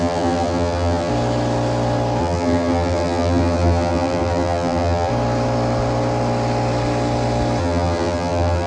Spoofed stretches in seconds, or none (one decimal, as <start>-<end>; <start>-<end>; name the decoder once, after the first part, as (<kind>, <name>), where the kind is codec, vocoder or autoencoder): 0.0-1.1 (vocoder, BigVGAN v2); 2.2-5.1; 7.6-8.7